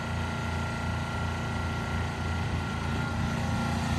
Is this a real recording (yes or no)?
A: yes